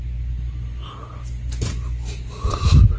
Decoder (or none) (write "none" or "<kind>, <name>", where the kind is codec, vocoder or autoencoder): none